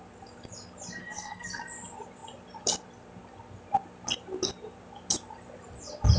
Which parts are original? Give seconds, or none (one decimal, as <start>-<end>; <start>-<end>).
0.0-1.0; 1.6-6.2